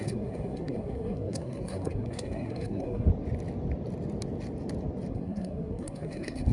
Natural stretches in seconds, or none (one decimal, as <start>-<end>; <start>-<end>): 3.1-5.1